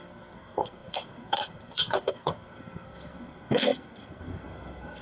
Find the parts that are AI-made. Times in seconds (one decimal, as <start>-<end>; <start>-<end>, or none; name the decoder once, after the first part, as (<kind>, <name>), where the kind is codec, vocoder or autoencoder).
0.0-5.0 (codec, SNAC)